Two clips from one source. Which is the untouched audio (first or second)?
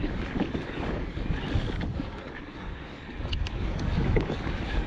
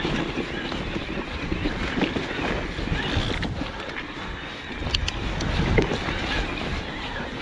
second